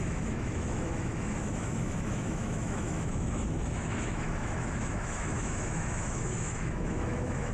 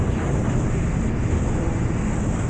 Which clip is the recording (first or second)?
second